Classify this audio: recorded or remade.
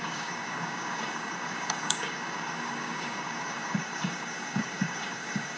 remade